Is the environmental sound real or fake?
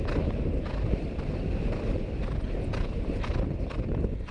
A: real